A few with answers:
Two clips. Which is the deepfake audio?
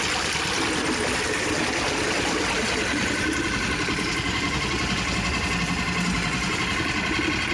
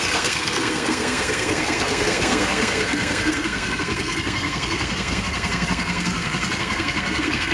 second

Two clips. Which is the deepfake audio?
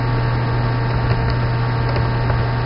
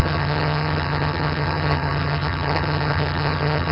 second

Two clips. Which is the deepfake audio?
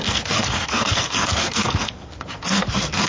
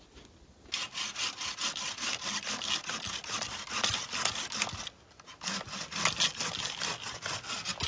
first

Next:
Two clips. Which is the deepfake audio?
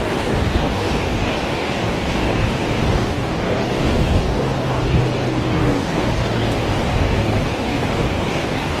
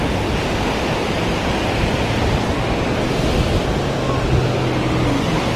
first